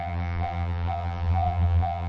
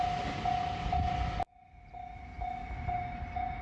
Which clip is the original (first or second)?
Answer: second